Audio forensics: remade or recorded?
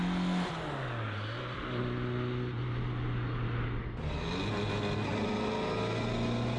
recorded